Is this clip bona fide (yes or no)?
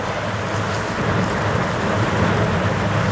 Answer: yes